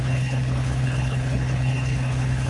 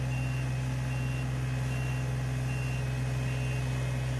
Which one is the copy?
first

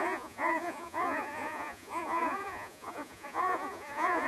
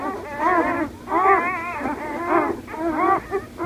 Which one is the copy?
first